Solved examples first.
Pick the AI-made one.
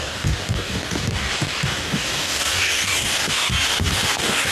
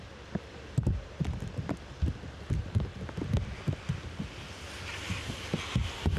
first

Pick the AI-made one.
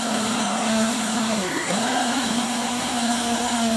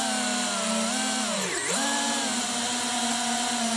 first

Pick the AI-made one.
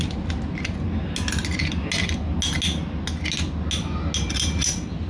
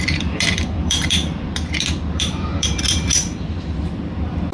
second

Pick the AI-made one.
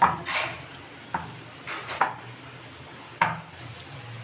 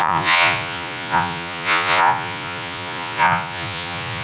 second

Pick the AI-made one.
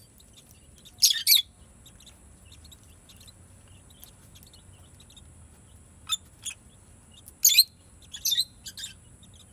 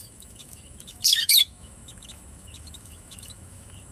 second